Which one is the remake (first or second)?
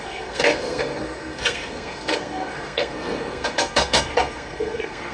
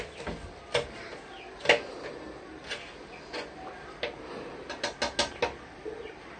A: first